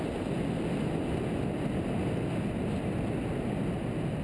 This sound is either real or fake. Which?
real